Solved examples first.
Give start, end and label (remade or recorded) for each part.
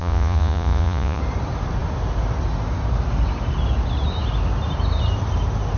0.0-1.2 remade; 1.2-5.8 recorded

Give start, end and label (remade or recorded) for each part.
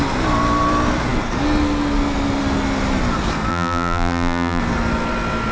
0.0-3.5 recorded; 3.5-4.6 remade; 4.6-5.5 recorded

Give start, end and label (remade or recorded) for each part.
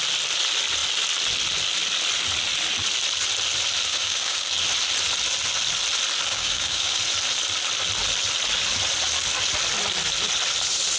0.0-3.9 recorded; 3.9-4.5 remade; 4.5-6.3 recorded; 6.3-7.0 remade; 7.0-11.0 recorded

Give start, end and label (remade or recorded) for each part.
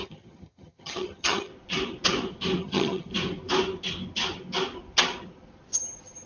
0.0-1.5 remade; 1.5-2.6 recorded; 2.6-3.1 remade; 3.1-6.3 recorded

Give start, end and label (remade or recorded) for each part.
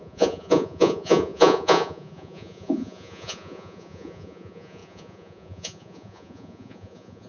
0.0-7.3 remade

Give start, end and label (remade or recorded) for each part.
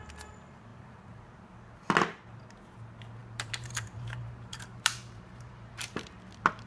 0.0-0.7 recorded; 0.7-1.2 remade; 1.2-3.2 recorded; 3.2-6.0 remade; 6.0-6.7 recorded